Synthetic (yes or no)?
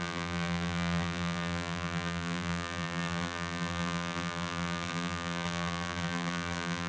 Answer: yes